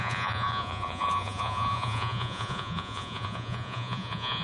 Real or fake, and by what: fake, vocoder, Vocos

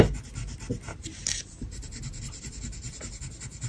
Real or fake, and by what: real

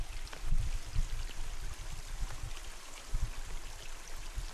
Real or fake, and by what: real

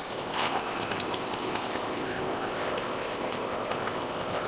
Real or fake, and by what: fake, codec, ZipCodec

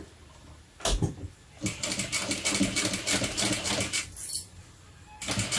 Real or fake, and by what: real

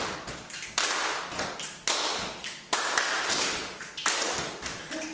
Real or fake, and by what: real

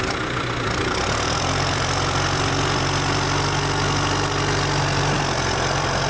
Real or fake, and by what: fake, vocoder, BigVGAN v2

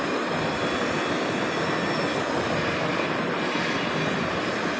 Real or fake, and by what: real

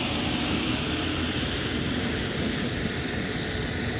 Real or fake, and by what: fake, vocoder, BigVGAN v2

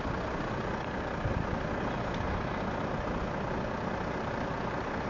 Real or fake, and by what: real